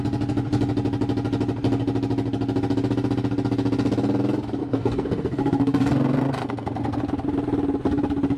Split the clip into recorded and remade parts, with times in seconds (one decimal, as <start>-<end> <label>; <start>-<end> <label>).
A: 0.0-4.6 recorded; 4.6-7.0 remade; 7.0-8.4 recorded